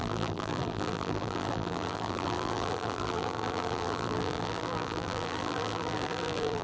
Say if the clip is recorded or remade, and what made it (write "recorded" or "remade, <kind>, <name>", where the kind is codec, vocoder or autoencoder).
remade, vocoder, BigVGAN v2